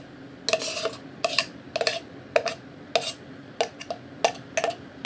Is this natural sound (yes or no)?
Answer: yes